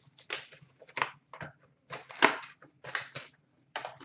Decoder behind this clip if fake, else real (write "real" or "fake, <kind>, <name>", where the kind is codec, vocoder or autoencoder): real